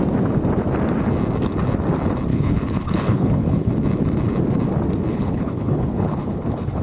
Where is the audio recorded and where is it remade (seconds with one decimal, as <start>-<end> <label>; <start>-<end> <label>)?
0.0-2.3 recorded; 2.3-3.7 remade; 3.7-5.1 recorded; 5.1-6.8 remade